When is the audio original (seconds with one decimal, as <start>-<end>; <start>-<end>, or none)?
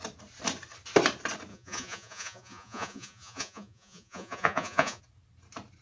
0.0-1.5; 5.0-5.8